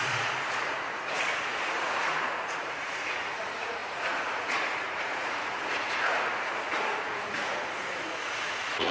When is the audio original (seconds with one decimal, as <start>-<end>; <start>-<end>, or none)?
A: none